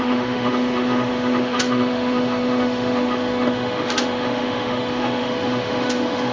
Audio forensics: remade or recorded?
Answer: remade